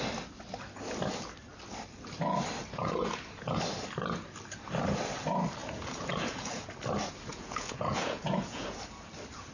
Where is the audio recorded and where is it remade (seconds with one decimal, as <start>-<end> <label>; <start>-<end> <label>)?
0.0-2.6 recorded; 2.6-3.6 remade; 3.6-5.6 recorded; 5.6-6.7 remade; 6.7-7.3 recorded; 7.3-8.8 remade; 8.8-9.5 recorded